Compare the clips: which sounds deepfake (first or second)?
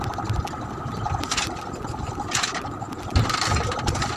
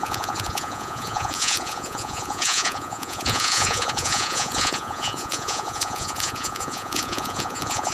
second